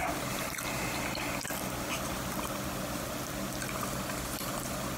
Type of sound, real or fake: real